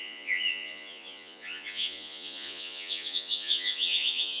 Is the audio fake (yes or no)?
yes